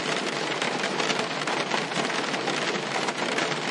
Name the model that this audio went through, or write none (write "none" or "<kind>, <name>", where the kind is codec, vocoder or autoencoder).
none